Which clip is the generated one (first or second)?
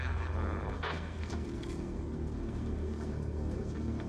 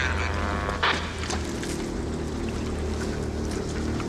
first